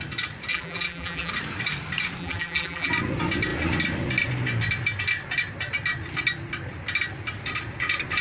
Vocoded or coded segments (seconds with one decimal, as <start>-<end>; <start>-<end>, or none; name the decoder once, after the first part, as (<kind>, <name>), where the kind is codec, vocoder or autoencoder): 0.5-1.3 (vocoder, BigVGAN v2); 2.2-2.9